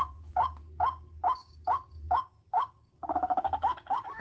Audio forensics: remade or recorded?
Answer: remade